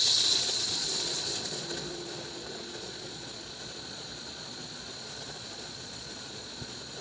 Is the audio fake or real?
fake